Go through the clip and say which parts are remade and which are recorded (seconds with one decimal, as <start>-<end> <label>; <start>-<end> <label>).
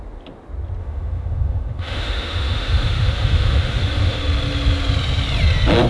0.0-0.8 recorded; 0.8-4.2 remade; 4.2-5.9 recorded